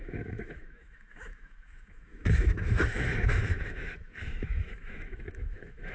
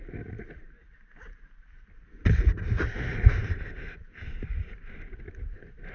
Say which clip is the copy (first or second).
first